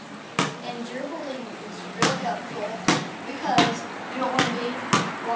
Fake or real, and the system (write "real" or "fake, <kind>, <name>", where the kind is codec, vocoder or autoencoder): real